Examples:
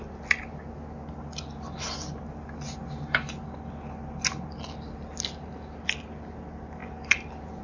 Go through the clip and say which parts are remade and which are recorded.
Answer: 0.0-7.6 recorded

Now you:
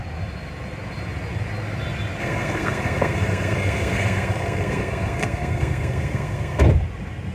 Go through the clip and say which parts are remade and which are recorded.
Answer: 0.0-2.2 recorded; 2.2-6.6 remade; 6.6-7.3 recorded

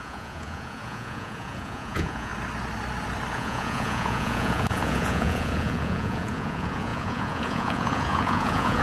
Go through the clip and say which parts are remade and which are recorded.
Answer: 0.0-2.3 remade; 2.3-3.3 recorded; 3.3-8.8 remade

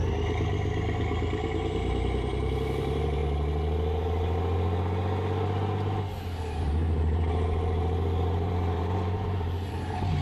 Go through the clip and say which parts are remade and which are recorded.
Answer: 0.0-3.2 remade; 3.2-6.6 recorded; 6.6-10.2 remade

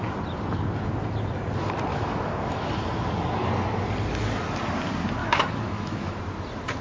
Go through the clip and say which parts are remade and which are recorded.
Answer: 0.0-1.9 recorded; 1.9-2.7 remade; 2.7-5.2 recorded; 5.2-6.2 remade; 6.2-6.8 recorded

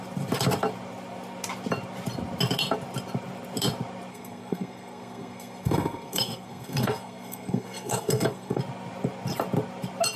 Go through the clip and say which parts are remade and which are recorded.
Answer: 0.0-4.1 recorded; 4.1-8.6 remade; 8.6-10.2 recorded

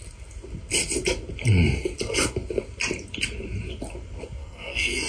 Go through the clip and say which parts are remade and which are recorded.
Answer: 0.0-4.4 recorded; 4.4-5.1 remade

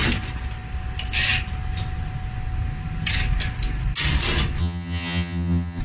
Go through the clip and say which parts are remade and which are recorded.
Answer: 0.0-4.6 recorded; 4.6-5.8 remade